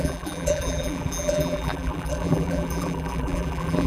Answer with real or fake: fake